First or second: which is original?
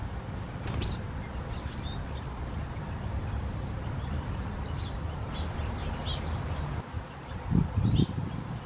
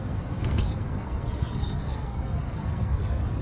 first